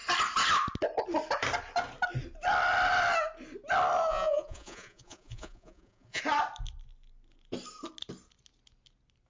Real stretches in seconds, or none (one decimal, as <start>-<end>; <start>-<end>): 0.0-4.1; 6.2-9.3